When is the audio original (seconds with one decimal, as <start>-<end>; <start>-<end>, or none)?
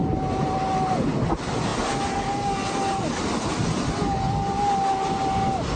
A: 0.0-5.8